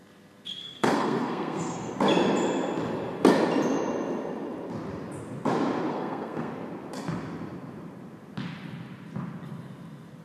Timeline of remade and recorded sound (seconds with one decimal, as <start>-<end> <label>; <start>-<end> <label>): 0.0-0.6 recorded; 0.6-1.9 remade; 1.9-5.9 recorded; 5.9-6.5 remade; 6.5-10.2 recorded